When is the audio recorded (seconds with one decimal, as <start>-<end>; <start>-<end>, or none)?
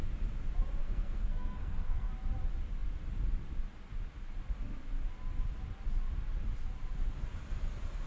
0.0-0.8; 2.1-8.1